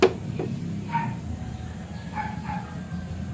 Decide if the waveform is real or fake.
real